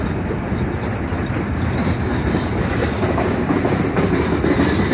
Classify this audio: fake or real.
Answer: real